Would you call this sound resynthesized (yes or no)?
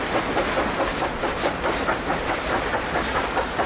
no